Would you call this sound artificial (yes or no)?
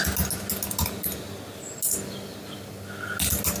no